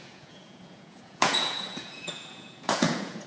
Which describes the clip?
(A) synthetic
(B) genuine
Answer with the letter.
A